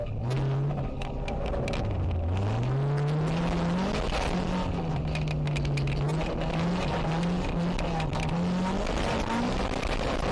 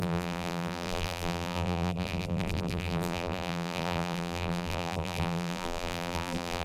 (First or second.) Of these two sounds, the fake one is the second